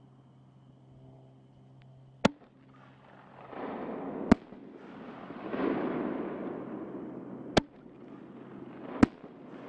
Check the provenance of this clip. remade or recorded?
recorded